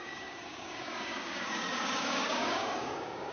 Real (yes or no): no